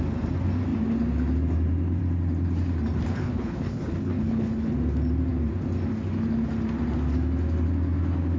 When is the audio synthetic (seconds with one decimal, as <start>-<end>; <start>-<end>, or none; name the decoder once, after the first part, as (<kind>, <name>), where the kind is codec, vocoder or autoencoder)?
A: 3.1-4.7 (codec, HILCodec)